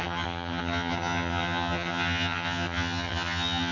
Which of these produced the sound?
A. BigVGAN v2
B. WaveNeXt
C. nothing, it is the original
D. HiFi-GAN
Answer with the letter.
D